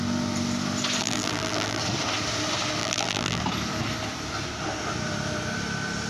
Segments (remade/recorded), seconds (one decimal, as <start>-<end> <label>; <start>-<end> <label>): 0.0-1.0 recorded; 1.0-1.8 remade; 1.8-2.8 recorded; 2.8-3.4 remade; 3.4-6.1 recorded